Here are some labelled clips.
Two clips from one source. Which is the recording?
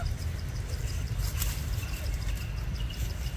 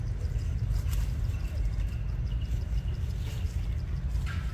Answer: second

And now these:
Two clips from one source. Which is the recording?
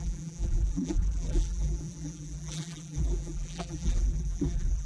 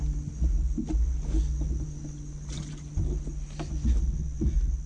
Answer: second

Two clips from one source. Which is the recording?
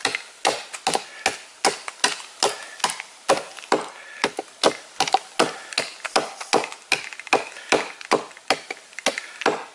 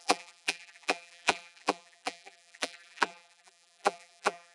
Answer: first